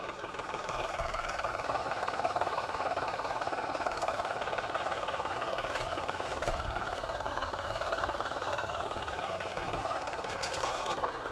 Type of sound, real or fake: fake